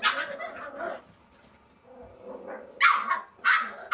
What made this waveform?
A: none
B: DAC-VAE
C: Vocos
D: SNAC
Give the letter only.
A